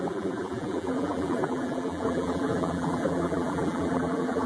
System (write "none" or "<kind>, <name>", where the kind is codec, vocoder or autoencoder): vocoder, BigVGAN v2